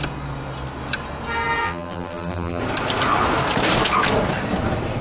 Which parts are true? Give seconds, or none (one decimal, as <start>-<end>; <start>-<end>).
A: 0.0-1.6; 2.6-5.0